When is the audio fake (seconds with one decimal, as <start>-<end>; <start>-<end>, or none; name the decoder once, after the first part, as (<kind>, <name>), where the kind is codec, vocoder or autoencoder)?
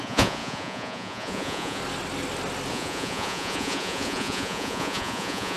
0.0-1.8 (vocoder, Vocos); 2.7-5.6